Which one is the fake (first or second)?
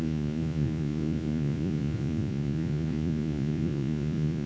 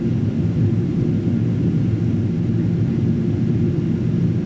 first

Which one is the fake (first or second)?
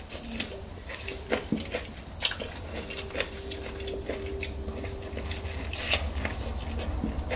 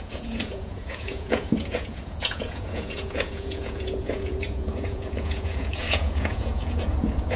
second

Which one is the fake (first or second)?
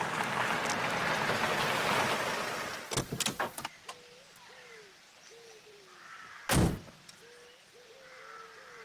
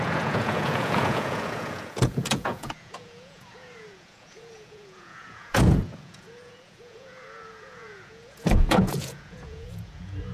second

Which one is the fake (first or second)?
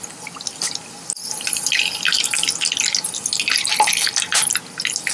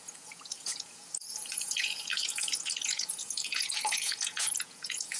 second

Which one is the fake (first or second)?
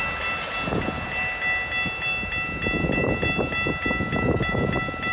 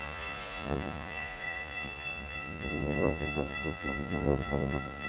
second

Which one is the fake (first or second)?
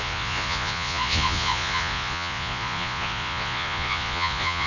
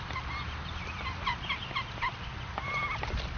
first